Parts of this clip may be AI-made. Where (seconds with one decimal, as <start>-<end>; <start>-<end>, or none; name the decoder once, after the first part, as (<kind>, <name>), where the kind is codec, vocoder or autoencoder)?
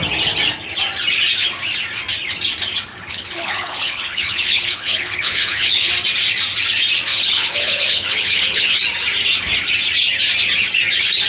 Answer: 2.9-5.9 (codec, HILCodec); 7.1-8.8